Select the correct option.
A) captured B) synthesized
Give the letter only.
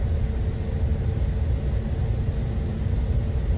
A